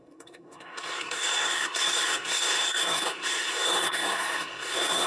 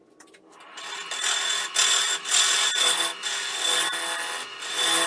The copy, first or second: first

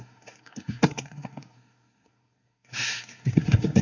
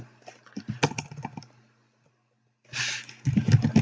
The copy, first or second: first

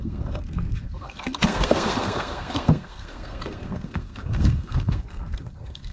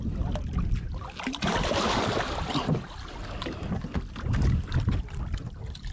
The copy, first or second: first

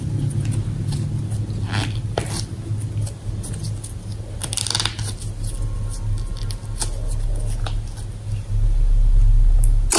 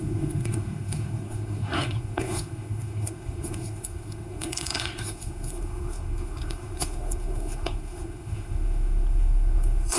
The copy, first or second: second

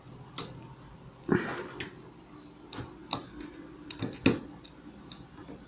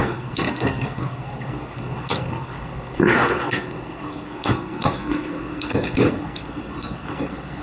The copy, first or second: second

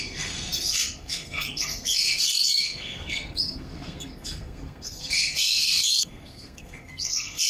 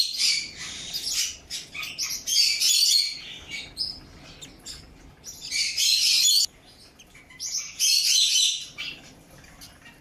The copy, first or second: first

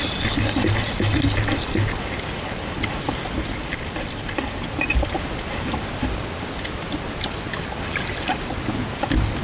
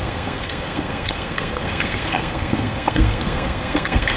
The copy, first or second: second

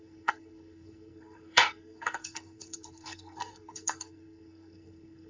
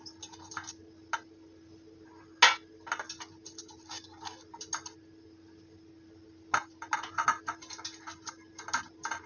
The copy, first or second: first